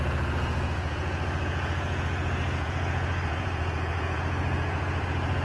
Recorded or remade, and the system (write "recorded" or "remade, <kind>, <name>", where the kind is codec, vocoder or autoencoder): remade, vocoder, Vocos